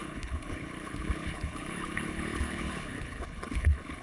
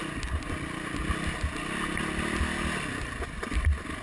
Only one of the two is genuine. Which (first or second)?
second